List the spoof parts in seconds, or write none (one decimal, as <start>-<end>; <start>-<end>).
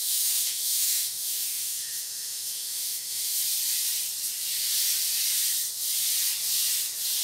0.0-3.4